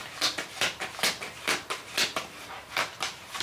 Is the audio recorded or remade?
recorded